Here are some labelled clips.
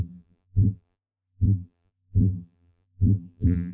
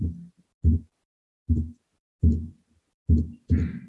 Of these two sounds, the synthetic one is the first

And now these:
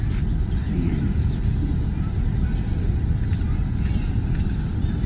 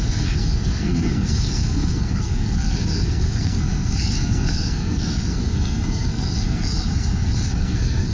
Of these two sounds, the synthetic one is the second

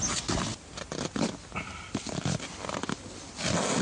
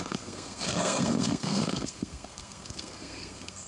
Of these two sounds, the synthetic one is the second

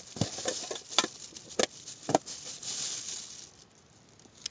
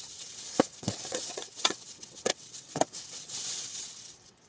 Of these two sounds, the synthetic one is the second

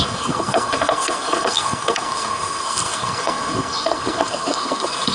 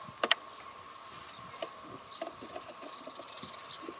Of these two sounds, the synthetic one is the first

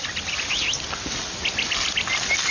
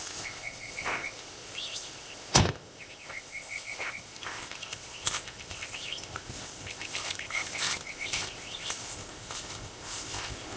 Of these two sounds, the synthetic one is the second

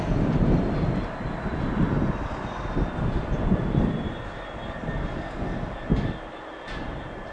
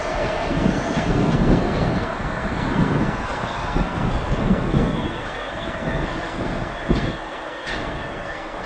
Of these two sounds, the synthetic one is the second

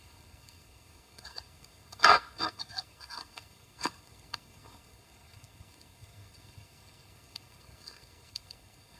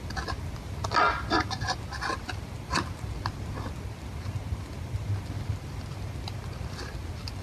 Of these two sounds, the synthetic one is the first